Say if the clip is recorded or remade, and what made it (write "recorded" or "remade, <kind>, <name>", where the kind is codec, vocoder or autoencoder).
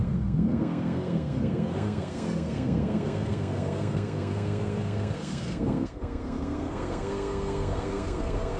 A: remade, codec, SNAC